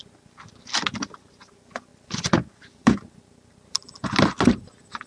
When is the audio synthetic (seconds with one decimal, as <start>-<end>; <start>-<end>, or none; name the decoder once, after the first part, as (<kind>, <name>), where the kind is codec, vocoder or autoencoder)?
none